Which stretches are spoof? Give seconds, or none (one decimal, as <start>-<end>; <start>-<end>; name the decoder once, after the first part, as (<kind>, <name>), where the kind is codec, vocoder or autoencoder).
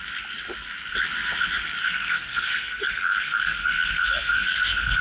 1.8-5.0 (codec, SNAC)